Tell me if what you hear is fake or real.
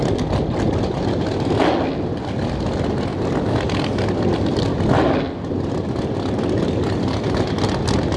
real